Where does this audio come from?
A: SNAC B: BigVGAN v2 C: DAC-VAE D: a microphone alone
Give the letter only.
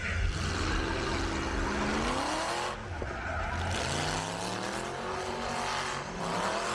D